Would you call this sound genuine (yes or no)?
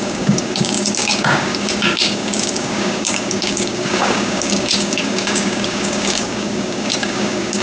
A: no